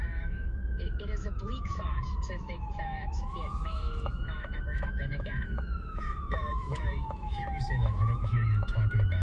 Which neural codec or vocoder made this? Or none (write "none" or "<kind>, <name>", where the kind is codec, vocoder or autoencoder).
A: autoencoder, DAC-VAE